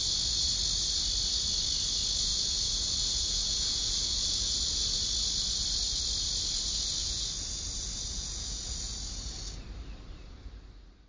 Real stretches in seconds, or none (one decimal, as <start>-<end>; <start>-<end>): 0.0-2.3; 5.0-7.0; 9.4-11.1